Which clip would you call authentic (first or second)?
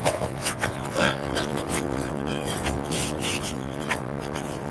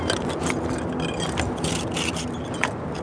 second